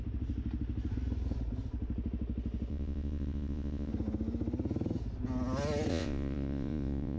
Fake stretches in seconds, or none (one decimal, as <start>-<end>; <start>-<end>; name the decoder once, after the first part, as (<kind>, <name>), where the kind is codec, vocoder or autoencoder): 2.7-3.9 (vocoder, Vocos); 5.9-7.2